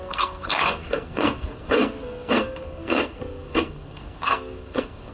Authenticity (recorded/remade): remade